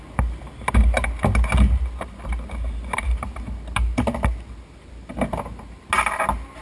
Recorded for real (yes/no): yes